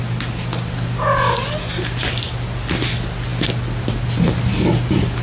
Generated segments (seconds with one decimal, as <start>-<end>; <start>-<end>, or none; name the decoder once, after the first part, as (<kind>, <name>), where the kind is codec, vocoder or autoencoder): none